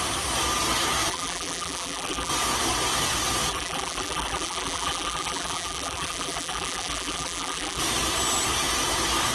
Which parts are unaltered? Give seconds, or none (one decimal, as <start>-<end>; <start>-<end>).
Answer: 0.0-1.1; 2.3-3.5; 7.8-9.3

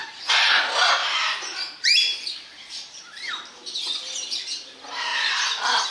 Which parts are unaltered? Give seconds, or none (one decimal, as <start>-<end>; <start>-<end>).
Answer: 0.6-1.0; 3.3-5.1